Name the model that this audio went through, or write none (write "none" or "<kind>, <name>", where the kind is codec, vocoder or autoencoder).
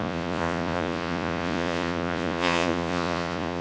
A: vocoder, Vocos